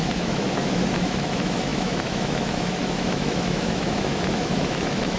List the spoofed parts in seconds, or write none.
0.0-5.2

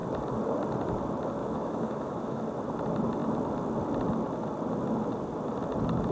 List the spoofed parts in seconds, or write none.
1.4-2.4

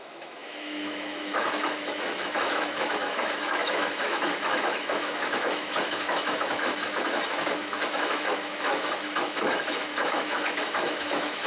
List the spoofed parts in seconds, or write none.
0.0-11.5

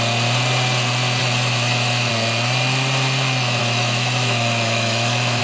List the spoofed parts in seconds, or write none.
1.2-2.1; 3.6-5.4